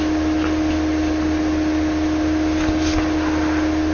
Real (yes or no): yes